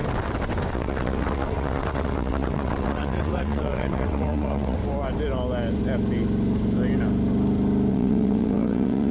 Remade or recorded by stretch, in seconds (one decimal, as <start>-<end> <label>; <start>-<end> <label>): 0.0-0.7 recorded; 0.7-4.8 remade; 4.8-7.9 recorded; 7.9-9.1 remade